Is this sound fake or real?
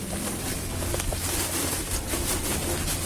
real